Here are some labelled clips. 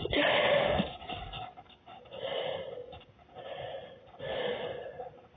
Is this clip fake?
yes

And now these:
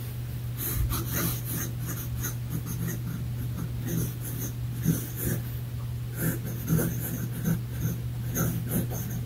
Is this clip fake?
no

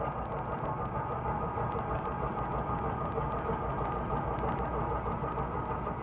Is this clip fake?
no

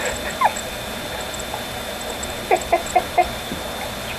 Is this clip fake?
no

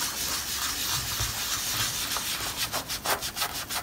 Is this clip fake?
no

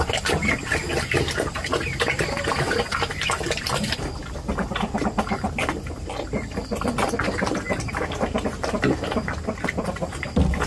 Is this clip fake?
yes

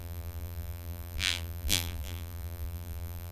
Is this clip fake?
yes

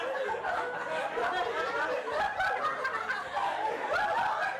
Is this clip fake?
no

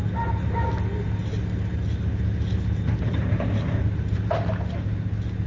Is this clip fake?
no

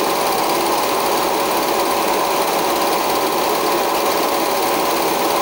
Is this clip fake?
no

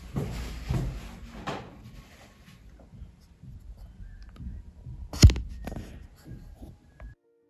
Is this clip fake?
no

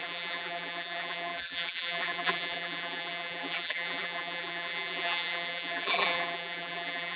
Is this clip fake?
yes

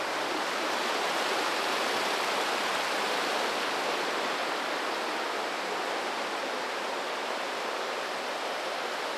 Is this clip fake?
yes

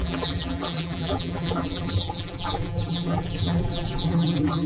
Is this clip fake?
yes